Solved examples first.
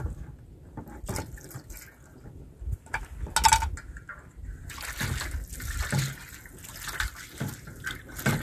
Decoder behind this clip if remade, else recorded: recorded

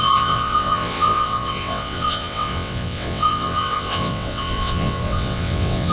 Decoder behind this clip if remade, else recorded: remade, vocoder, WaveNeXt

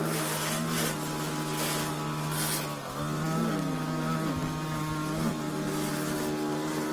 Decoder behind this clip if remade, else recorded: recorded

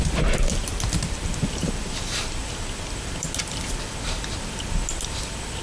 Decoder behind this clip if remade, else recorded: recorded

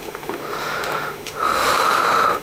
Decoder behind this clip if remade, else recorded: remade, autoencoder, DAC-VAE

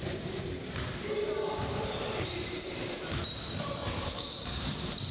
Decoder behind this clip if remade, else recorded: remade, vocoder, BigVGAN v2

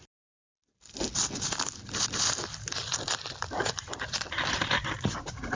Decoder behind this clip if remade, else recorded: recorded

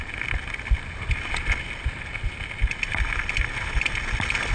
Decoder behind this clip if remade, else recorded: recorded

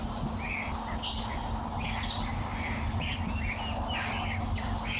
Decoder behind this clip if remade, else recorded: recorded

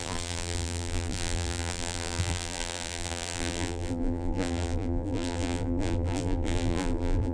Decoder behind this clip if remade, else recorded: remade, vocoder, BigVGAN v2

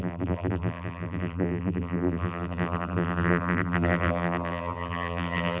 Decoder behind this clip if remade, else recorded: remade, vocoder, BigVGAN v2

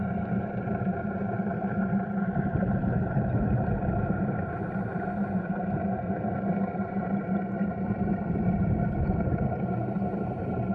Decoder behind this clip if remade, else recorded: remade, vocoder, BigVGAN v2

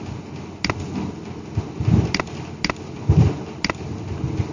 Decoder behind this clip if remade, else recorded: recorded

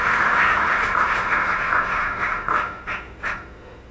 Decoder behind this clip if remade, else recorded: remade, autoencoder, DAC-VAE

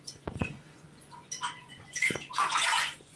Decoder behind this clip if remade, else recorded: remade, vocoder, Vocos